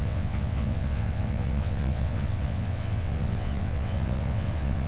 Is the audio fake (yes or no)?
yes